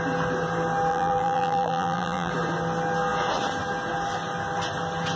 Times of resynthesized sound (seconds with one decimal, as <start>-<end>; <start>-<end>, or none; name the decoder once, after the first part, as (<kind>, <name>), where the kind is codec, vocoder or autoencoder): 0.9-2.3 (vocoder, BigVGAN v2)